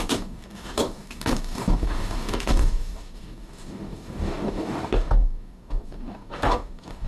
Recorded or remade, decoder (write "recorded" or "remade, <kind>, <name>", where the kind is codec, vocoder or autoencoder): remade, codec, DAC